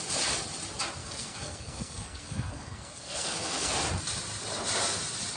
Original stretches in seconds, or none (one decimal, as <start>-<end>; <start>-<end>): 0.0-1.0; 3.7-5.4